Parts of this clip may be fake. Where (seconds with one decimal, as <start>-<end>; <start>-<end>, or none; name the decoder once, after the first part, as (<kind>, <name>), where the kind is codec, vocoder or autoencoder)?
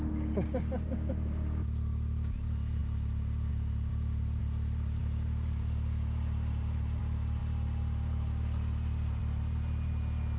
none